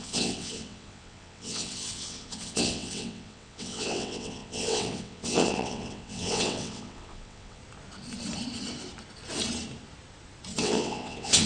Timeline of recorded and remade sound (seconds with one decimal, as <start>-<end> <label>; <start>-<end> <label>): 0.0-7.6 remade; 7.6-10.6 recorded; 10.6-11.5 remade

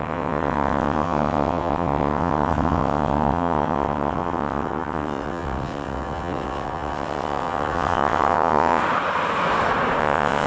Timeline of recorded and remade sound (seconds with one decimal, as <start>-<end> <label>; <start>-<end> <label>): 0.0-8.8 remade; 8.8-10.0 recorded; 10.0-10.5 remade

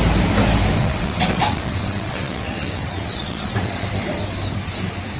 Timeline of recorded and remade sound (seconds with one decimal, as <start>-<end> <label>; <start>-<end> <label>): 0.0-0.8 recorded; 0.8-3.9 remade; 3.9-5.2 recorded

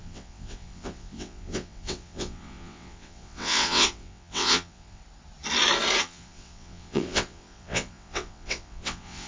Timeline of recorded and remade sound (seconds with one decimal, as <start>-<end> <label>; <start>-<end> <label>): 0.0-5.0 remade; 5.0-6.0 recorded; 6.0-9.3 remade

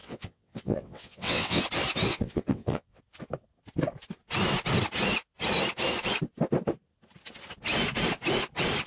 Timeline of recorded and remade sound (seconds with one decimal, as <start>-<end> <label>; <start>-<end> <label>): 0.0-1.6 remade; 1.6-2.1 recorded; 2.1-3.0 remade; 3.0-8.9 recorded

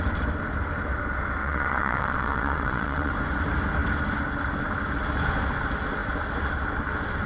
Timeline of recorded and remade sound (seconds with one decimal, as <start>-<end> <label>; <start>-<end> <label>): 0.0-1.4 recorded; 1.4-3.1 remade; 3.1-7.3 recorded

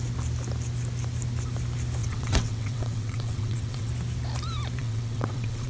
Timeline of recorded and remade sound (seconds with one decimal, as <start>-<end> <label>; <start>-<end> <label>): 0.0-2.0 recorded; 2.0-3.9 remade; 3.9-4.8 recorded; 4.8-5.7 remade